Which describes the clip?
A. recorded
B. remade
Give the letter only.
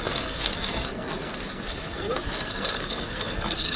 B